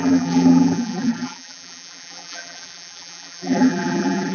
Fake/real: fake